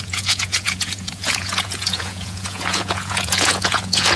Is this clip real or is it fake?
fake